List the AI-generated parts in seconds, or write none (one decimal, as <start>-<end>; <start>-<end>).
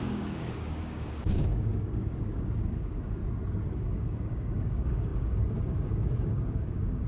0.0-3.2; 3.7-7.1